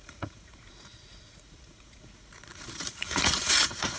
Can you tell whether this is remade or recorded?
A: remade